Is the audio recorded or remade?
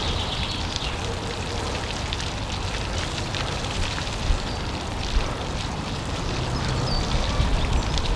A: recorded